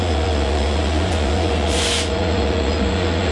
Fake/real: fake